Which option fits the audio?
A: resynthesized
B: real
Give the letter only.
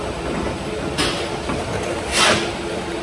A